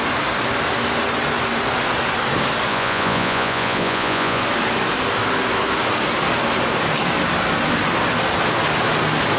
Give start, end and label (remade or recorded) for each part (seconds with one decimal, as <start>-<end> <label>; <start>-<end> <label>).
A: 0.0-2.7 recorded; 2.7-4.4 remade; 4.4-9.4 recorded